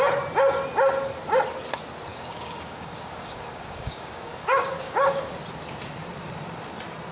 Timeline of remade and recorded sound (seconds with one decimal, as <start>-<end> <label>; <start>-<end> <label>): 0.0-2.1 recorded; 2.1-5.3 remade; 5.3-7.1 recorded